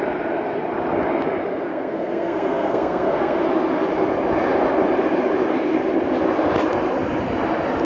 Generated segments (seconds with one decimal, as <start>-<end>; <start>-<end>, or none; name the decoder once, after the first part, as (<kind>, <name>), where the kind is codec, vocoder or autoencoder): 1.7-3.4 (codec, SNAC)

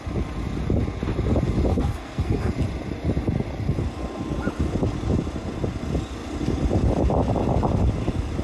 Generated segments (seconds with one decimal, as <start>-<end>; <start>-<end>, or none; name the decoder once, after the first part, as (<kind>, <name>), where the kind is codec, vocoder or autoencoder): 1.7-2.5 (codec, SNAC)

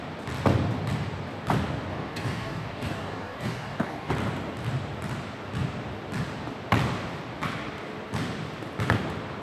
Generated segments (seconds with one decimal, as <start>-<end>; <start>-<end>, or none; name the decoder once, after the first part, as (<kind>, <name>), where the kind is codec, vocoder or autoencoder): 1.9-4.1 (codec, DAC)

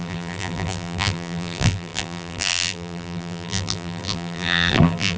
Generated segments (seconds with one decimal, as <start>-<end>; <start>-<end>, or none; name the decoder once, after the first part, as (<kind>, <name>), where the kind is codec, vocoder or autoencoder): 0.0-5.2 (vocoder, BigVGAN v2)

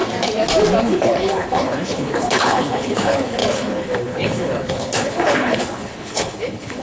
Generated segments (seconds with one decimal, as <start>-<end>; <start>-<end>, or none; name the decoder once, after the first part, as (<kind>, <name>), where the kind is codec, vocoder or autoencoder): 0.8-6.8 (codec, HILCodec)